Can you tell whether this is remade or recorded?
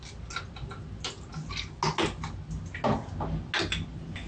recorded